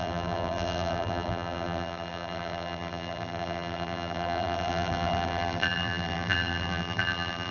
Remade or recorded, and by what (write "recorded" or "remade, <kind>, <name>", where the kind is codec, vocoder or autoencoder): remade, vocoder, BigVGAN v2